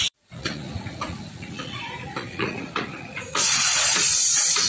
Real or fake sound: fake